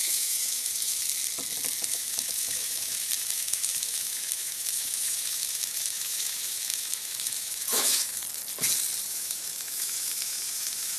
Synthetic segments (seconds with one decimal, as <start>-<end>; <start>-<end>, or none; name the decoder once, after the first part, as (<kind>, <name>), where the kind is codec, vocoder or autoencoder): 0.0-1.0 (autoencoder, DAC-VAE); 1.9-8.2; 9.1-11.0